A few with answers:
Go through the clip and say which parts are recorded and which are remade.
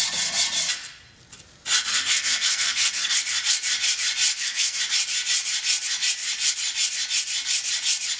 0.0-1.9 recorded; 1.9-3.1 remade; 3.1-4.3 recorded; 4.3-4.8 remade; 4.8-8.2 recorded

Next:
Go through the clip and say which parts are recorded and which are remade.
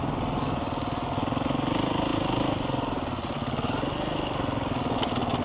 0.0-5.4 recorded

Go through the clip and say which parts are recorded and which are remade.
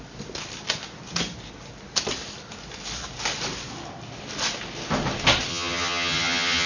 0.0-5.5 recorded; 5.5-6.7 remade